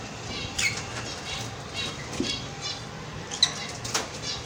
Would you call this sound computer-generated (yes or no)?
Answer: no